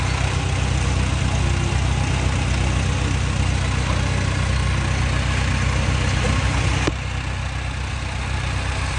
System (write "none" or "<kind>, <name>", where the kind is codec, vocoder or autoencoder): none